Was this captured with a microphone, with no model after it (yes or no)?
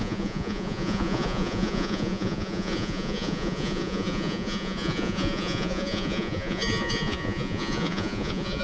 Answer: no